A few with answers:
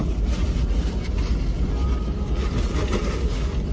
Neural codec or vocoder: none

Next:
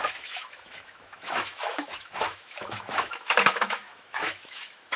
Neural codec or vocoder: autoencoder, DAC-VAE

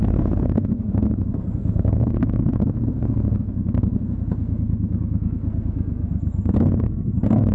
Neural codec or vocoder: codec, SNAC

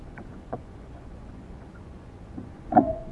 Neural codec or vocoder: vocoder, Vocos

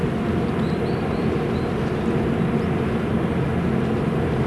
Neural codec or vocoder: none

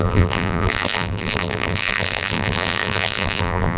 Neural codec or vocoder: vocoder, BigVGAN v2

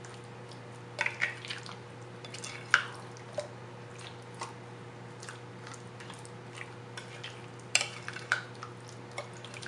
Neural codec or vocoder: none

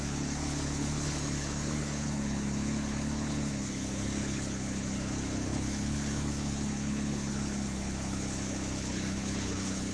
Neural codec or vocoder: codec, HILCodec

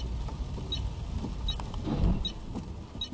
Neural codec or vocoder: none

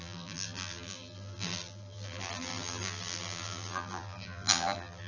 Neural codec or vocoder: vocoder, BigVGAN v2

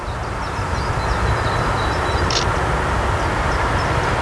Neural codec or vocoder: none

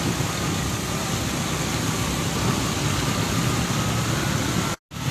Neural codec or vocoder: none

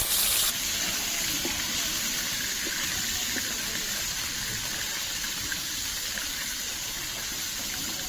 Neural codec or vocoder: none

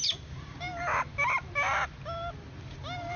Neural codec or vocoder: none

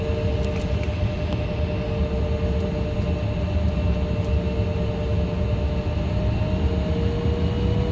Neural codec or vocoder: none